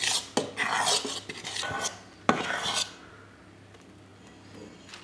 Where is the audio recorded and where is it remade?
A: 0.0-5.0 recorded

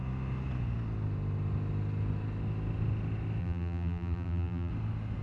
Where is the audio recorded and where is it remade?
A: 0.0-3.4 recorded; 3.4-4.7 remade; 4.7-5.2 recorded

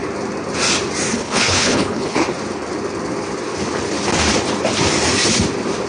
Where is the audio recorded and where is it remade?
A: 0.0-1.1 recorded; 1.1-2.2 remade; 2.2-5.9 recorded

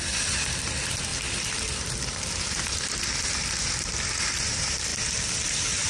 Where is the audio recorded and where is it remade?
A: 0.0-5.9 recorded

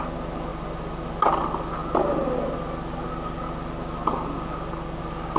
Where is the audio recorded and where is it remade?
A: 0.0-5.4 recorded

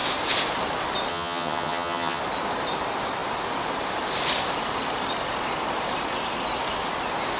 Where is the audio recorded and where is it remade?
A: 0.0-1.1 recorded; 1.1-2.2 remade; 2.2-7.4 recorded

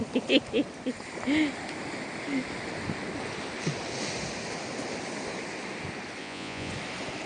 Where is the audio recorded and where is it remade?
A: 0.0-6.2 recorded; 6.2-6.7 remade; 6.7-7.3 recorded